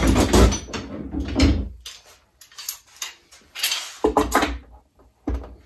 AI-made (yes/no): no